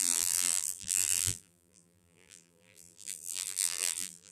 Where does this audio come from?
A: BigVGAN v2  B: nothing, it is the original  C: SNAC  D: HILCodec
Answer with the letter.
A